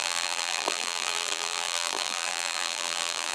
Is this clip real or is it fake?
fake